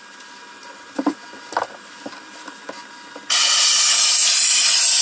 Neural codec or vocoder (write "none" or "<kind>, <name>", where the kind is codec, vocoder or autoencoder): none